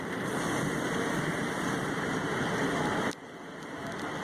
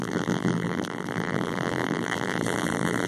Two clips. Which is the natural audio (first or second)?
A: first